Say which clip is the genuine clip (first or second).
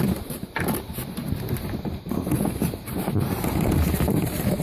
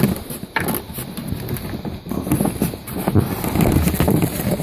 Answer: second